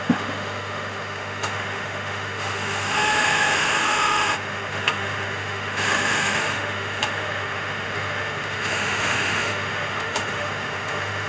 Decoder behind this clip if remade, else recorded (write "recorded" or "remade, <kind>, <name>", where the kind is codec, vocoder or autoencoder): remade, autoencoder, DAC-VAE